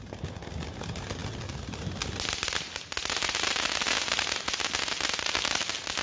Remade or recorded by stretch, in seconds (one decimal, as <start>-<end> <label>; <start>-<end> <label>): 0.0-6.0 recorded